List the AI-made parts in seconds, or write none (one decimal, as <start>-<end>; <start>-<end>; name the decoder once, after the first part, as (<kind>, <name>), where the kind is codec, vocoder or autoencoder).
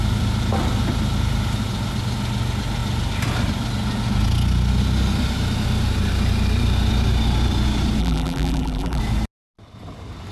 8.0-9.0 (vocoder, BigVGAN v2)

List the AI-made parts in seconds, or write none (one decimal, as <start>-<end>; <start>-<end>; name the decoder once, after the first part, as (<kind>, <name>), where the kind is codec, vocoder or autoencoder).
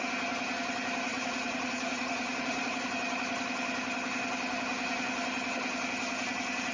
1.1-2.8 (vocoder, Vocos)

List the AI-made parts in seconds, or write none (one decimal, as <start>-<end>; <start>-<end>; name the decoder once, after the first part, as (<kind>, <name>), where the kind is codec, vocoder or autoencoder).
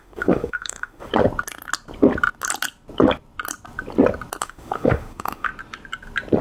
0.0-1.1 (autoencoder, DAC-VAE); 4.4-5.5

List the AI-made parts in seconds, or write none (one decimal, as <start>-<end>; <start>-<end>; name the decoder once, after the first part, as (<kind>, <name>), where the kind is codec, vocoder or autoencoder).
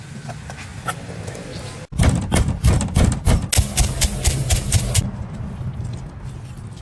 none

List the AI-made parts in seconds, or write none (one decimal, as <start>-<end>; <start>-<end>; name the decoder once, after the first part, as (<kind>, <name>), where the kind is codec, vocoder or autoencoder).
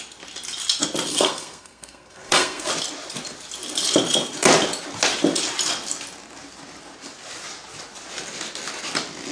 1.1-2.7 (codec, SNAC)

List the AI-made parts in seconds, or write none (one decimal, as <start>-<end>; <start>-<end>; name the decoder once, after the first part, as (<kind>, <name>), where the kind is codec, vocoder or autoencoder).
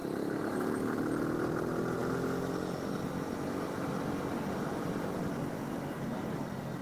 0.0-1.2 (vocoder, BigVGAN v2)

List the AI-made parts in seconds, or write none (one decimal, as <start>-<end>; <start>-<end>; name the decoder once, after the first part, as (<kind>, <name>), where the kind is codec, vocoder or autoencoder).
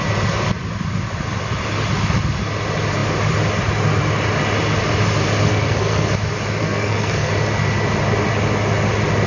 5.5-6.1 (codec, SNAC); 6.6-7.3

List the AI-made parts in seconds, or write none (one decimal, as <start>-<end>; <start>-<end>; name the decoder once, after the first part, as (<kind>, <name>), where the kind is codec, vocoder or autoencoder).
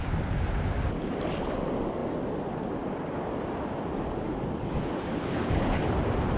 none